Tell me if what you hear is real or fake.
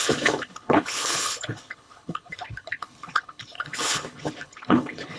fake